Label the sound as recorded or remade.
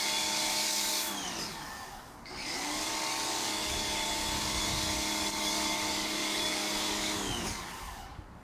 remade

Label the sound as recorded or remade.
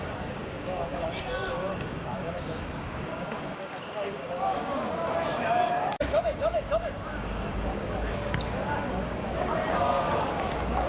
remade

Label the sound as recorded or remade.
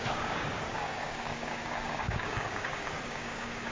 remade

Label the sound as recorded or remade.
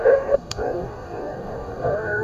remade